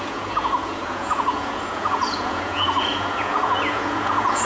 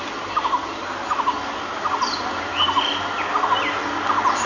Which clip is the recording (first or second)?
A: second